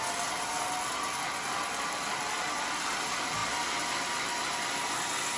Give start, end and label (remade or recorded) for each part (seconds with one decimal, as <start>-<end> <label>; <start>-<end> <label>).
0.0-5.4 recorded

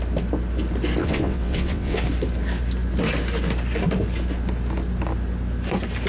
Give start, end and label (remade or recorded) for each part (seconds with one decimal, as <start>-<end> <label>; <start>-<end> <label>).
0.0-1.0 recorded; 1.0-2.0 remade; 2.0-6.1 recorded

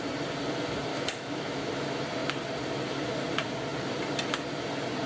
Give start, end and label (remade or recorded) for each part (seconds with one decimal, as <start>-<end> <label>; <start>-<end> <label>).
0.0-0.9 recorded; 0.9-1.7 remade; 1.7-5.1 recorded

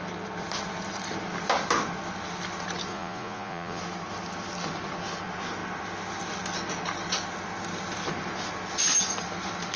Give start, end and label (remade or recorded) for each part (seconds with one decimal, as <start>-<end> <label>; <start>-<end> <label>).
0.0-2.9 recorded; 2.9-3.8 remade; 3.8-9.8 recorded

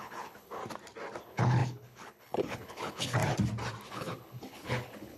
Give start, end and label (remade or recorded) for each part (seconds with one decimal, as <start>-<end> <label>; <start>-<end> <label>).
0.0-0.6 remade; 0.6-1.2 recorded; 1.2-3.2 remade; 3.2-3.9 recorded; 3.9-5.2 remade

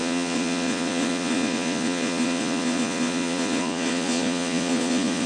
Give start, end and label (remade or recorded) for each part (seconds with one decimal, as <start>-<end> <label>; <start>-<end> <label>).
0.0-5.3 remade

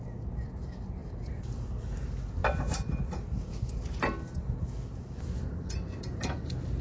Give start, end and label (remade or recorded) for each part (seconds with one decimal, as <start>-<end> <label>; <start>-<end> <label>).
0.0-1.0 recorded; 1.0-2.0 remade; 2.0-6.8 recorded

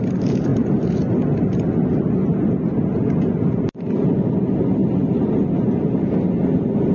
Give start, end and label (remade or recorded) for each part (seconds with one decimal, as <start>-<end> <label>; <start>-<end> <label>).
0.0-6.9 recorded